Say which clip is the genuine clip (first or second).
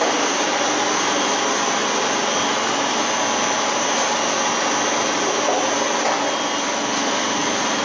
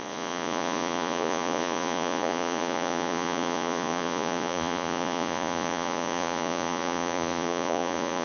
first